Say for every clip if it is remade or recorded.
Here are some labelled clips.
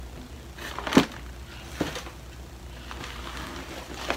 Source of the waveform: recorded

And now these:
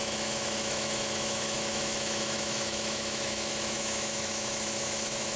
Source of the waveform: remade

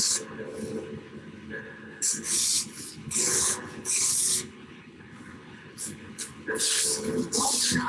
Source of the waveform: remade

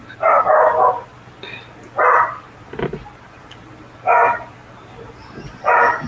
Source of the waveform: recorded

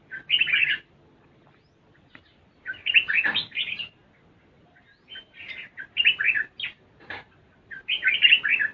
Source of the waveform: recorded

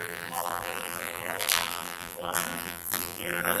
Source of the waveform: remade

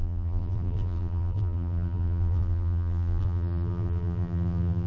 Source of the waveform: remade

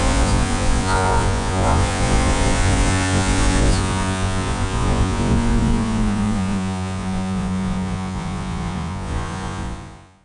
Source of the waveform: remade